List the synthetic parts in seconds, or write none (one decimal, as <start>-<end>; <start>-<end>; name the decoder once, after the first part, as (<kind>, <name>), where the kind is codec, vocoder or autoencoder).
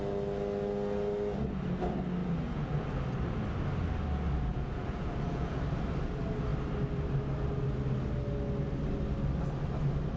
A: 2.2-2.9 (vocoder, Vocos); 4.5-5.6